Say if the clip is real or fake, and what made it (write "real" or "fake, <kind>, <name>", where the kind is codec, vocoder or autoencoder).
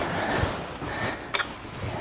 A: real